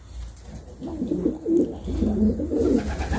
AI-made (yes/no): no